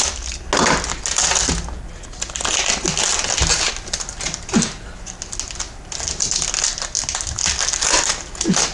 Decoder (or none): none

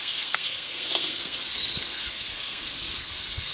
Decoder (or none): codec, SNAC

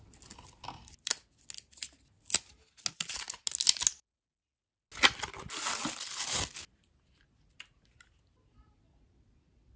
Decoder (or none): none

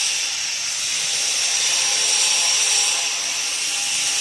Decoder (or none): none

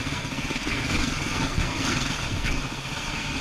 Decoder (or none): codec, SNAC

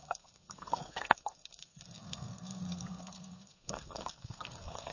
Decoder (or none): codec, SNAC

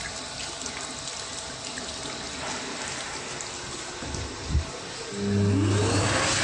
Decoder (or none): none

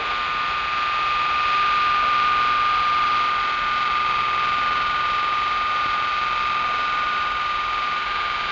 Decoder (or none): none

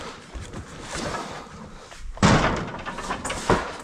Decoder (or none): none